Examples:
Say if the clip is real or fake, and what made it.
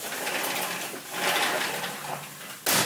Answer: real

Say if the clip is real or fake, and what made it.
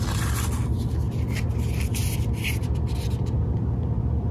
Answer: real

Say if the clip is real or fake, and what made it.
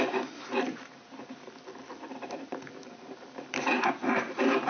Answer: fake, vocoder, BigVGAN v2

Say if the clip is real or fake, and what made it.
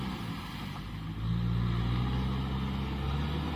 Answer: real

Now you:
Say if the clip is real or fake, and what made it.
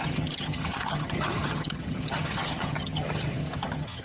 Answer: fake, vocoder, HiFi-GAN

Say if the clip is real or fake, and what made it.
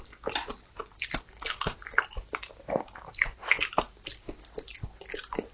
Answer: real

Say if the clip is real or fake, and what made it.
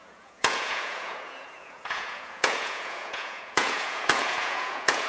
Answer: fake, vocoder, Vocos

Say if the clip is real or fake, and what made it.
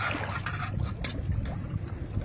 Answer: real